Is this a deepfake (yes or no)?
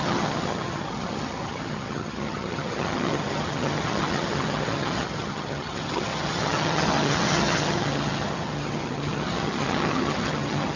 yes